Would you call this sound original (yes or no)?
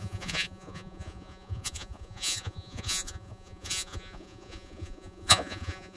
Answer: no